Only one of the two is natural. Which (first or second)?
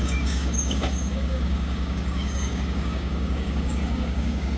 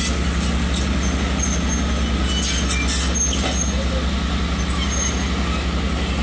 second